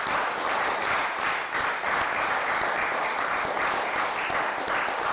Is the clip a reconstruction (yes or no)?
no